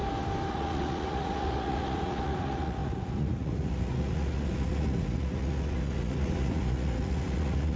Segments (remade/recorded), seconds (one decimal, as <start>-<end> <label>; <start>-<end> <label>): 0.0-0.5 recorded; 0.5-7.8 remade

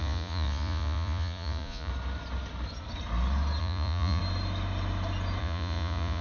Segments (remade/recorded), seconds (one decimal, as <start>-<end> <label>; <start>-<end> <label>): 0.0-1.9 remade; 1.9-3.6 recorded; 3.6-4.2 remade; 4.2-5.4 recorded; 5.4-6.2 remade